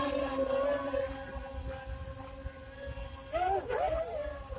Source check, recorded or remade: recorded